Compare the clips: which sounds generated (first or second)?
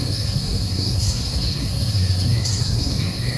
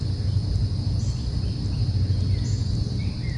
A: first